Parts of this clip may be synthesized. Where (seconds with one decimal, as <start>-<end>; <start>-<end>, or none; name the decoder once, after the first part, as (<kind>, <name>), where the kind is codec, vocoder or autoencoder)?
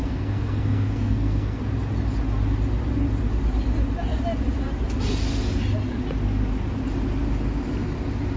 0.0-1.6 (codec, SNAC)